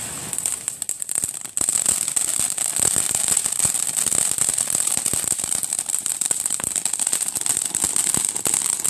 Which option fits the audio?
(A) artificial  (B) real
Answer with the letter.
B